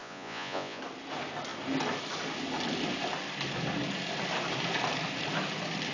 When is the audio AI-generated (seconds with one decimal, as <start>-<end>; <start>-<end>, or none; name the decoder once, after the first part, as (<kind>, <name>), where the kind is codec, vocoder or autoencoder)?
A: 0.0-0.8 (vocoder, Vocos)